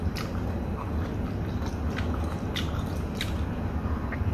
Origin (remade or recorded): recorded